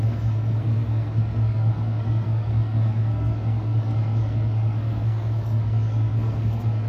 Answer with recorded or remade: remade